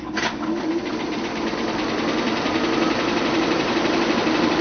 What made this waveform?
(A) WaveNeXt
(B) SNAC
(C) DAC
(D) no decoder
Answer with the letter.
D